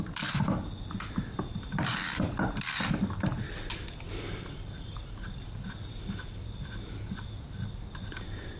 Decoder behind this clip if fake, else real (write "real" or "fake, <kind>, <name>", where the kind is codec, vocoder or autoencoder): fake, vocoder, BigVGAN v2